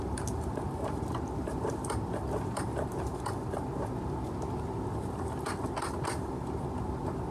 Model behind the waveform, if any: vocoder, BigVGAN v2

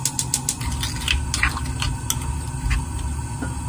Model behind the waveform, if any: none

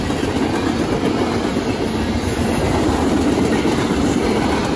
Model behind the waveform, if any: vocoder, BigVGAN v2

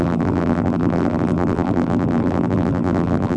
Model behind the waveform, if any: vocoder, BigVGAN v2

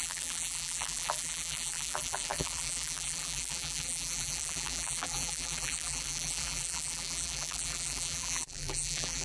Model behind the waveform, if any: vocoder, BigVGAN v2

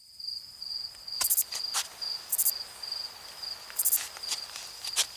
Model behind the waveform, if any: none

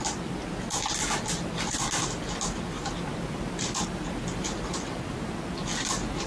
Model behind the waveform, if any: none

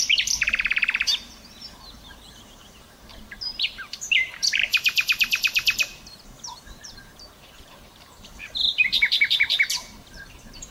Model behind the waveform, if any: vocoder, BigVGAN v2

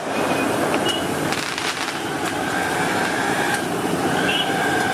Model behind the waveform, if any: vocoder, BigVGAN v2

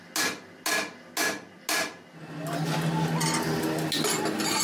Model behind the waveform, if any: none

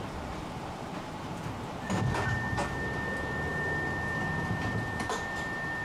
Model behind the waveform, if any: none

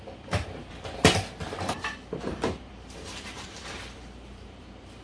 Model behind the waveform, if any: vocoder, BigVGAN v2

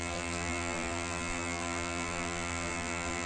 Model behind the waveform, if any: vocoder, BigVGAN v2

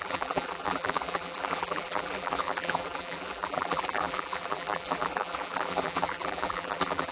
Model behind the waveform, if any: vocoder, BigVGAN v2